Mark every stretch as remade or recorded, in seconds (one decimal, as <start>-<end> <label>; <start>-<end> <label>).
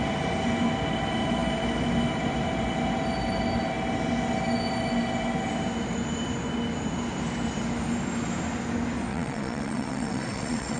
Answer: 0.0-9.1 recorded; 9.1-10.8 remade